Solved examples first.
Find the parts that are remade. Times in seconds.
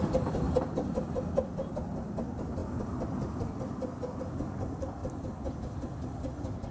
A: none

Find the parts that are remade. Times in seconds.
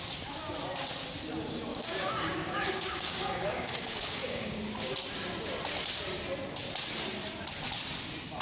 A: 1.7-4.6 (codec, DAC)